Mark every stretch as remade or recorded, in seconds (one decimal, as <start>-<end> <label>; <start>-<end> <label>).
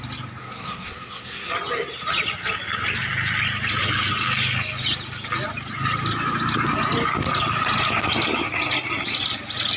0.0-0.4 recorded; 0.4-1.5 remade; 1.5-9.8 recorded